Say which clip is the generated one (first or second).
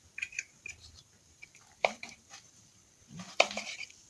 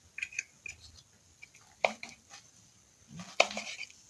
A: first